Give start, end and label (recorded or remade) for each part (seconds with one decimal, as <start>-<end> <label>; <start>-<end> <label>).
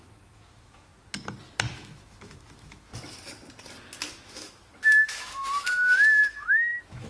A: 0.0-0.9 remade; 0.9-1.7 recorded; 1.7-2.9 remade; 2.9-4.1 recorded; 4.1-7.1 remade